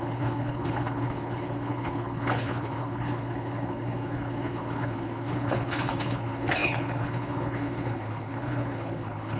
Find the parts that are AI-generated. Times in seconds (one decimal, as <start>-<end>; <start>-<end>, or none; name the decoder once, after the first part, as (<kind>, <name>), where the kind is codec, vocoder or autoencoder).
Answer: 0.0-9.4 (codec, HILCodec)

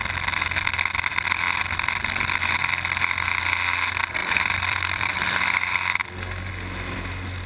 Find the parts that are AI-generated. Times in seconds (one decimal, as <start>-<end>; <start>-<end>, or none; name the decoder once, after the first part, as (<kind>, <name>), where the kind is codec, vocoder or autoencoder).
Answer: 4.2-6.5 (vocoder, BigVGAN v2)